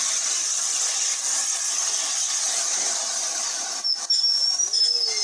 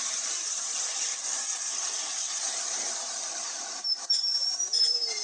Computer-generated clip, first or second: second